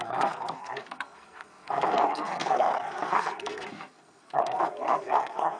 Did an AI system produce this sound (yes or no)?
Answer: yes